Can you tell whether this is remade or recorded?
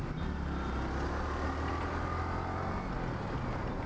recorded